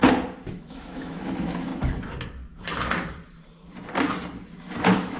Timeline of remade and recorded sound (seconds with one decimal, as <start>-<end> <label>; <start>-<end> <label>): 0.0-0.5 recorded; 0.5-1.7 remade; 1.7-4.8 recorded; 4.8-5.2 remade